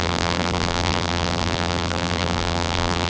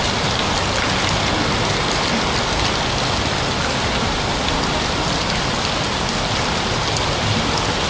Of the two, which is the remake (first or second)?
first